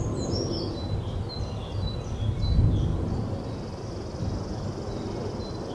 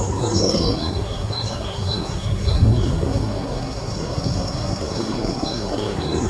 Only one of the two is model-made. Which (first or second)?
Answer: second